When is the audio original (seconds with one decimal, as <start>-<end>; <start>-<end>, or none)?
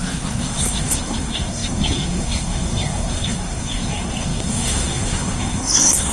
none